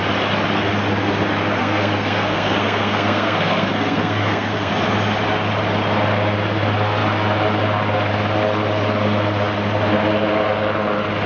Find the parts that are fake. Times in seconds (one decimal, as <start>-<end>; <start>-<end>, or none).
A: 1.6-4.7